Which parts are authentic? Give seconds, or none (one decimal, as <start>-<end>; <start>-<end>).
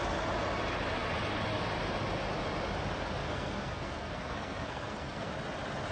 0.0-3.2; 5.3-5.9